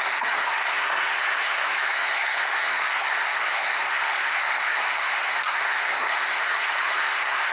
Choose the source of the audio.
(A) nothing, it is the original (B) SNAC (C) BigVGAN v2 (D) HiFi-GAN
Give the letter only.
B